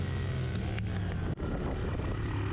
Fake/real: real